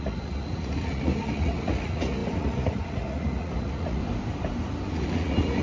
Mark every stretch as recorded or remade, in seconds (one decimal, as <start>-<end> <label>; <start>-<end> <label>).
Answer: 0.0-4.0 remade; 4.0-4.9 recorded; 4.9-5.6 remade